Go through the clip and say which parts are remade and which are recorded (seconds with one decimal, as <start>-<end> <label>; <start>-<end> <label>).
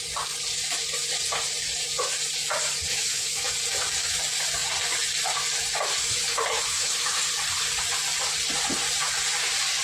0.0-2.9 recorded; 2.9-3.5 remade; 3.5-6.0 recorded; 6.0-7.3 remade; 7.3-9.8 recorded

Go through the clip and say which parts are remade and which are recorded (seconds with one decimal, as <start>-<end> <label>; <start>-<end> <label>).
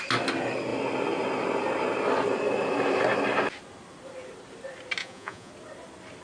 0.0-5.0 recorded; 5.0-5.5 remade; 5.5-6.2 recorded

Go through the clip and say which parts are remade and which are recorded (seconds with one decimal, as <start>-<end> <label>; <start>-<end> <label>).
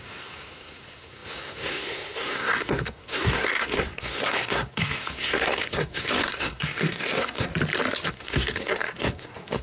0.0-7.5 remade; 7.5-8.1 recorded; 8.1-9.6 remade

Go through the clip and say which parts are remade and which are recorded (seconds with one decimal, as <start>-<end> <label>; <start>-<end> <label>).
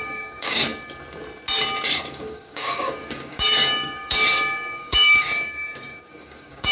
0.0-0.6 remade; 0.6-2.0 recorded; 2.0-6.7 remade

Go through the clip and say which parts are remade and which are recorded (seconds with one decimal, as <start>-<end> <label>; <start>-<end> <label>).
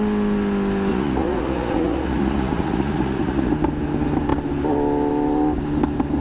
0.0-0.9 recorded; 0.9-3.5 remade; 3.5-6.2 recorded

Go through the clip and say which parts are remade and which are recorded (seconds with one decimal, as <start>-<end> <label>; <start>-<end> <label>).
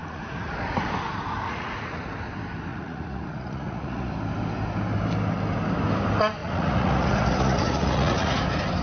0.0-0.9 remade; 0.9-1.4 recorded; 1.4-2.0 remade; 2.0-2.7 recorded; 2.7-4.1 remade; 4.1-6.4 recorded; 6.4-8.4 remade; 8.4-8.8 recorded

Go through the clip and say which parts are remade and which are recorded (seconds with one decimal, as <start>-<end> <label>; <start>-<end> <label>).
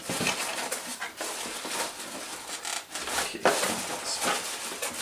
0.0-5.0 recorded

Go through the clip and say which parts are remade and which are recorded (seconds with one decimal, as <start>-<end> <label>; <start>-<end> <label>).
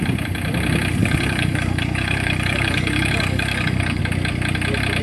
0.0-1.0 recorded; 1.0-4.0 remade; 4.0-5.0 recorded